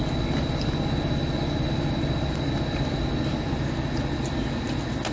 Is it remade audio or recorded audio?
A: recorded